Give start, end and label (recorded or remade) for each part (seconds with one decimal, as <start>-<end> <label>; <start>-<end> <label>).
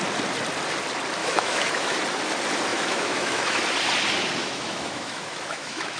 0.0-1.2 recorded; 1.2-2.0 remade; 2.0-2.7 recorded; 2.7-3.6 remade; 3.6-4.4 recorded; 4.4-6.0 remade